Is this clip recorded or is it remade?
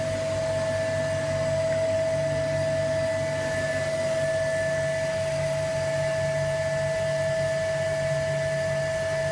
recorded